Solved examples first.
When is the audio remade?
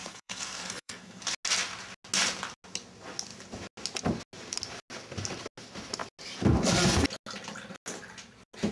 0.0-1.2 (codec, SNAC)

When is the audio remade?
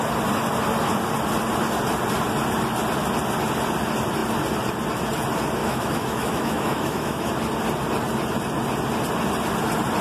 5.6-7.3 (autoencoder, DAC-VAE)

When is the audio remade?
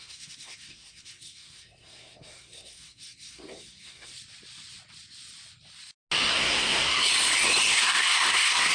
0.0-4.1 (codec, SNAC); 6.3-7.1; 7.7-8.7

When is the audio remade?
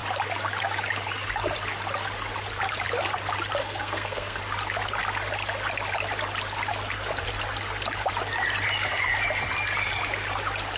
3.6-4.4 (codec, SNAC)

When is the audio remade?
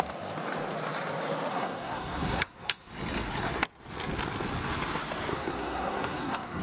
1.5-2.9 (codec, SNAC); 5.3-6.6